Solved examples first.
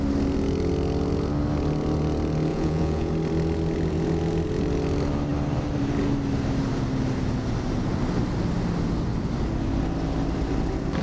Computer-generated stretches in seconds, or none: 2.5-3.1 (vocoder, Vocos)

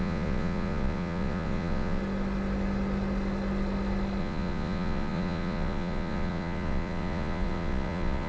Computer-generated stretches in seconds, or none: 0.0-2.0 (vocoder, Vocos); 4.2-8.3

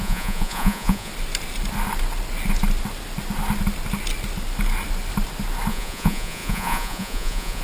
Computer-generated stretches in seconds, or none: 0.0-1.1 (vocoder, Vocos); 5.7-7.6